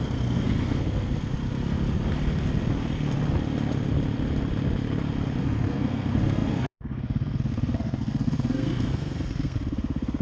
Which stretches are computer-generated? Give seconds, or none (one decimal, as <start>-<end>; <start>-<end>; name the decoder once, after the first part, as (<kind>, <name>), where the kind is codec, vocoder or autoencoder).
0.0-1.3 (codec, SNAC); 5.4-10.2